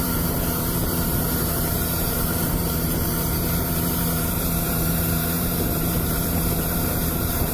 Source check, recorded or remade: remade